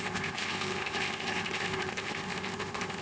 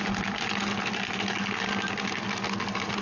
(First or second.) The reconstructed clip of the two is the first